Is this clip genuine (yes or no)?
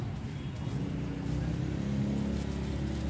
yes